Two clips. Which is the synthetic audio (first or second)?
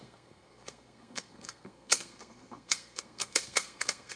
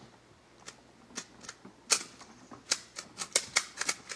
first